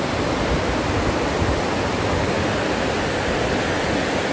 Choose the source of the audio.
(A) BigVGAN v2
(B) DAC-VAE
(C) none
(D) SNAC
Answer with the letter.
C